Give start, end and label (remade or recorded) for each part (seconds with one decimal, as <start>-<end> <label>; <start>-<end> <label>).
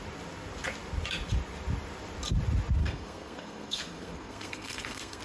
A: 0.0-2.8 recorded; 2.8-5.2 remade